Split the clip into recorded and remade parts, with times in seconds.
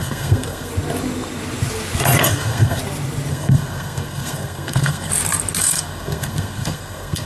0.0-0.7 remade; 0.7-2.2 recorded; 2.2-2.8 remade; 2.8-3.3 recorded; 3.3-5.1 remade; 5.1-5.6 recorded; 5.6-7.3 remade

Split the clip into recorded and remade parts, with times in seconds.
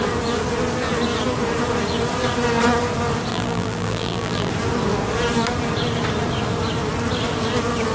0.0-3.3 recorded; 3.3-4.5 remade; 4.5-7.9 recorded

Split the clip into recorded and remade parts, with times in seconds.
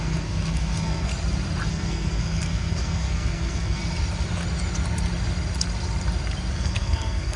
0.0-1.1 remade; 1.1-1.7 recorded; 1.7-3.8 remade; 3.8-6.5 recorded; 6.5-7.4 remade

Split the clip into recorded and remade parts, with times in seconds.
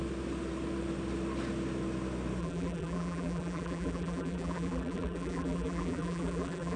0.0-2.4 recorded; 2.4-6.8 remade